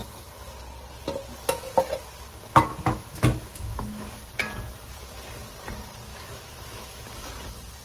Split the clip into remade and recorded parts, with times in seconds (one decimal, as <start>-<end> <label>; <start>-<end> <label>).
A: 0.0-2.7 recorded; 2.7-4.1 remade; 4.1-6.1 recorded; 6.1-7.0 remade; 7.0-7.8 recorded